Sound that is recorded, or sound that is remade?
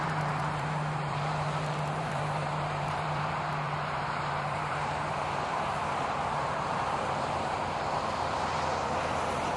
remade